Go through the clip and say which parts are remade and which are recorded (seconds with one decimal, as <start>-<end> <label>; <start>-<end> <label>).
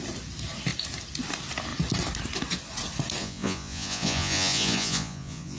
0.0-3.2 recorded; 3.2-5.6 remade